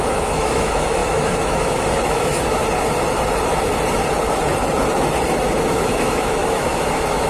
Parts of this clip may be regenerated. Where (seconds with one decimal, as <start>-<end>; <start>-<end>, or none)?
0.0-2.6; 5.7-7.3